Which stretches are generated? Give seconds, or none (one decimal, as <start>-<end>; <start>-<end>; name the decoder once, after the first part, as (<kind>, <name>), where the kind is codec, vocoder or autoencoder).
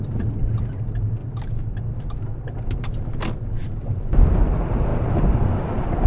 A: 1.2-2.0 (vocoder, BigVGAN v2); 4.9-5.4